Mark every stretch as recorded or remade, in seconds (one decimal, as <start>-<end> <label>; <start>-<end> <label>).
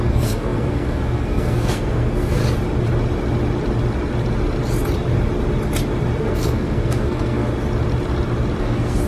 0.0-2.4 remade; 2.4-6.2 recorded; 6.2-7.5 remade; 7.5-8.6 recorded; 8.6-9.1 remade